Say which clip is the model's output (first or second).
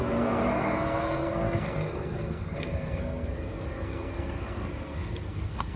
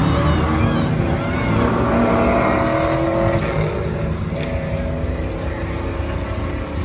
first